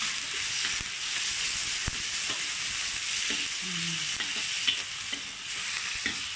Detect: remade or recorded recorded